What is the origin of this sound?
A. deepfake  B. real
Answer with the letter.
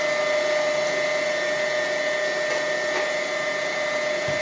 B